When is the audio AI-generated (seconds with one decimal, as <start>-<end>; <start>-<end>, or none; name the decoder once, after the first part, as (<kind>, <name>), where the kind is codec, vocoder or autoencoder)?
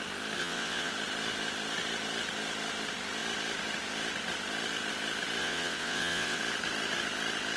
0.4-0.9 (vocoder, WaveNeXt); 5.4-6.4